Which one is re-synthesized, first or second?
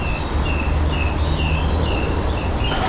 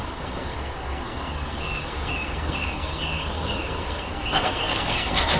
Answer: second